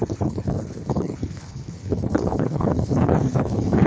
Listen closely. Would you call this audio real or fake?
fake